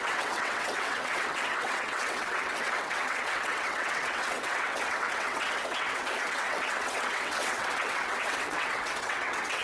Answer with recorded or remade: remade